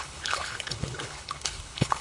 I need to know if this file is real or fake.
fake